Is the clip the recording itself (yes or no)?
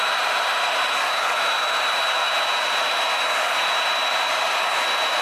no